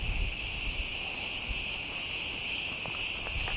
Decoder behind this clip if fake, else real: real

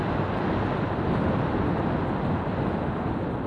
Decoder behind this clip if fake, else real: real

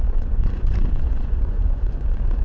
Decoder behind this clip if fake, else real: fake, vocoder, Vocos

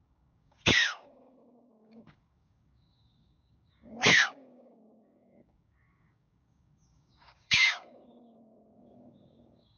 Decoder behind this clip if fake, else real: fake, codec, DAC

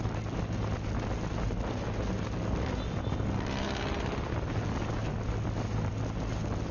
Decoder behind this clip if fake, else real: real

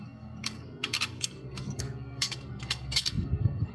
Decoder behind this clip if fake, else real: fake, codec, SNAC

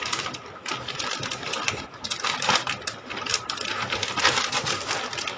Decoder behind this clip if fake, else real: real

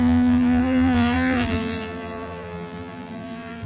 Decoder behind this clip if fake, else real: fake, vocoder, BigVGAN v2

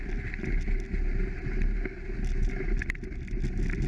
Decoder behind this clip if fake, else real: real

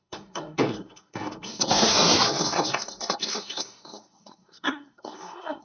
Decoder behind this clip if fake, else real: fake, codec, SNAC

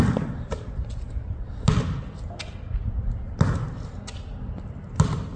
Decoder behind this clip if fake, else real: real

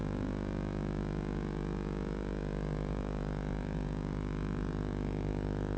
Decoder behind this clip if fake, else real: fake, vocoder, Vocos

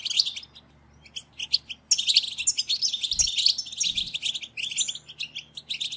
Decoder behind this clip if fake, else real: real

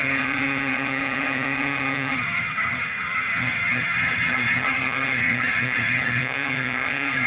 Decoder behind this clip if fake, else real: fake, vocoder, HiFi-GAN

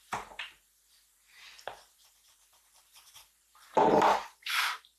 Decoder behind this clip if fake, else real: fake, vocoder, BigVGAN v2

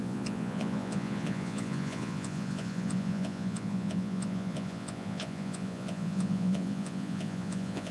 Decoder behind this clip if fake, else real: fake, vocoder, Vocos